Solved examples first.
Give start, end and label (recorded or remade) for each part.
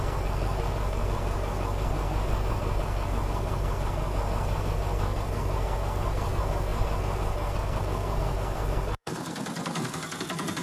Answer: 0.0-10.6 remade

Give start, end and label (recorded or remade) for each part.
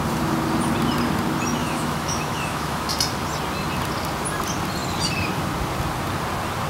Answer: 0.0-1.6 recorded; 1.6-2.9 remade; 2.9-6.7 recorded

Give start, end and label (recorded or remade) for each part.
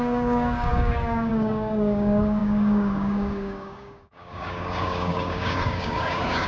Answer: 0.0-6.5 remade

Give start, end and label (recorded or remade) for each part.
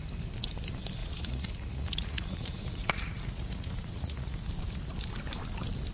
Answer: 0.0-1.0 recorded; 1.0-4.5 remade; 4.5-5.9 recorded